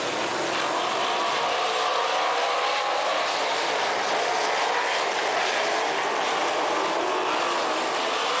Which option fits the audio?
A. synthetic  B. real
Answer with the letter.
B